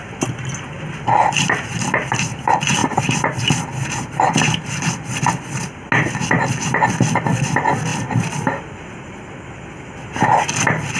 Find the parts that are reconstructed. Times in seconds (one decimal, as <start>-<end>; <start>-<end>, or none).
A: none